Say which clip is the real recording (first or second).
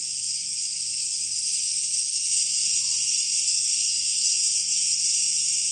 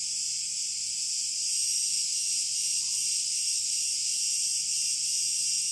second